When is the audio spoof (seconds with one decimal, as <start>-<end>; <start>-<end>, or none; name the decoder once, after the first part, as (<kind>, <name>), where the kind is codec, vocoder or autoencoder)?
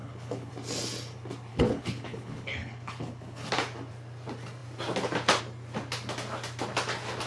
0.0-0.5 (codec, HILCodec); 1.5-3.5